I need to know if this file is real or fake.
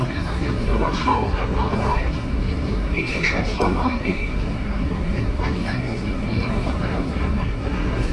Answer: fake